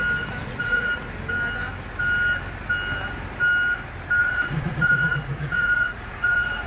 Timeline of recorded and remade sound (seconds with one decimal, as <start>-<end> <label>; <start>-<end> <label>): 0.0-0.4 recorded; 0.4-0.9 remade; 0.9-4.2 recorded; 4.2-6.7 remade